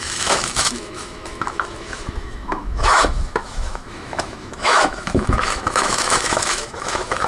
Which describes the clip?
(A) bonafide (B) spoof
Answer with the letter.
B